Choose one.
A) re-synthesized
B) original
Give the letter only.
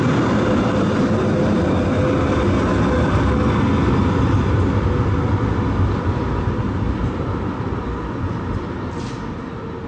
B